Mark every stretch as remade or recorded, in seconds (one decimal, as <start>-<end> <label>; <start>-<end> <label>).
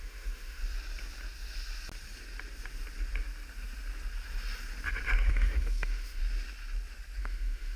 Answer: 0.0-0.6 remade; 0.6-5.3 recorded; 5.3-6.2 remade; 6.2-7.2 recorded; 7.2-7.8 remade